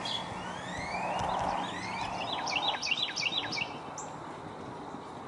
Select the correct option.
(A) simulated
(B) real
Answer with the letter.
B